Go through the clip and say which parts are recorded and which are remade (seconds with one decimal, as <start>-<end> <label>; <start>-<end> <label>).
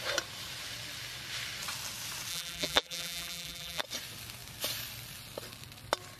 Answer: 0.0-2.3 recorded; 2.3-3.8 remade; 3.8-6.2 recorded